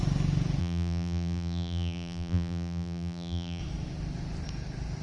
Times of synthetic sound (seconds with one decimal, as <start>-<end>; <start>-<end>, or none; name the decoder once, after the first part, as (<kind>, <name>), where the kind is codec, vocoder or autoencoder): 0.6-3.6 (vocoder, BigVGAN v2)